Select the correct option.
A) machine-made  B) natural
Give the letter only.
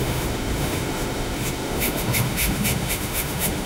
A